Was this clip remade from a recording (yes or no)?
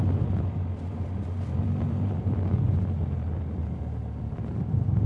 yes